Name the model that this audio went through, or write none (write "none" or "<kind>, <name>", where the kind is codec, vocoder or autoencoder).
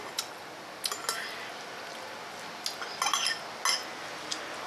none